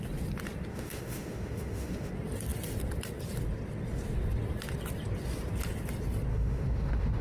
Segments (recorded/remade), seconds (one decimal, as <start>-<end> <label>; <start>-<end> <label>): 0.0-0.7 recorded; 0.7-2.1 remade; 2.1-6.3 recorded; 6.3-7.2 remade